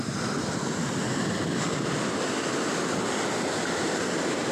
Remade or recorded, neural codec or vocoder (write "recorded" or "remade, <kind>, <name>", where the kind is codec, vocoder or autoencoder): recorded